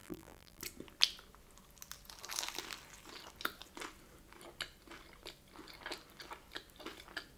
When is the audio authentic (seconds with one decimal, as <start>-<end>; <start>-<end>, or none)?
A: 0.6-7.4